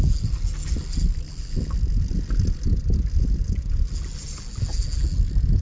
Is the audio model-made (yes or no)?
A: no